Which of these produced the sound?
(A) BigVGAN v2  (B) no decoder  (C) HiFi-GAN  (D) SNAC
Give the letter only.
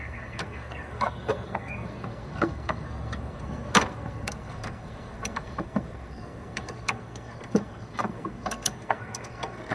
D